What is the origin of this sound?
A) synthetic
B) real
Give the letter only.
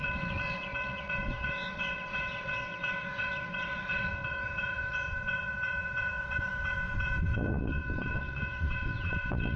A